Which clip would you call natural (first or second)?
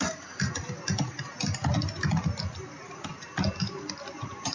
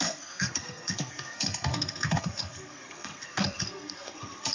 first